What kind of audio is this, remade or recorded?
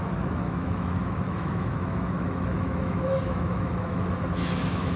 remade